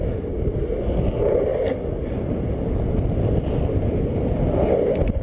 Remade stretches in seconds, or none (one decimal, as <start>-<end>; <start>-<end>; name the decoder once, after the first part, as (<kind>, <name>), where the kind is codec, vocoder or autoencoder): none